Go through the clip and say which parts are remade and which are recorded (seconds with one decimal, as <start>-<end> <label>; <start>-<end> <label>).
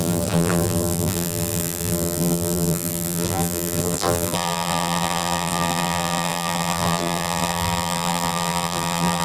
0.0-9.2 remade